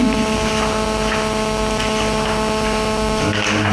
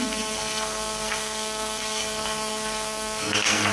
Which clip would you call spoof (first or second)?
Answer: second